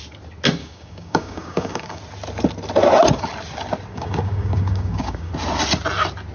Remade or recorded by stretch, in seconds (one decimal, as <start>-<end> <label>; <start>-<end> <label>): 0.0-0.6 recorded; 0.6-2.0 remade; 2.0-3.9 recorded; 3.9-5.3 remade; 5.3-6.3 recorded